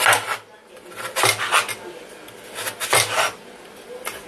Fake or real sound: real